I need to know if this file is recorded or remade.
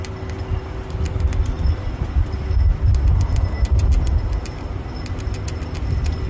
recorded